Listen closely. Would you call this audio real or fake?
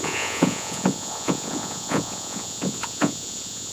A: fake